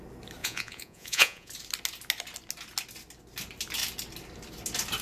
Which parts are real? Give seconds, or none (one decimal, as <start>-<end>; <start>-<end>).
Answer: 0.0-0.4; 1.5-5.0